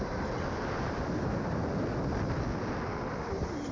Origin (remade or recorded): recorded